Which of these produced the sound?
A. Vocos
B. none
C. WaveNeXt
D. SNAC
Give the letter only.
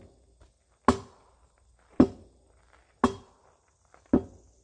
B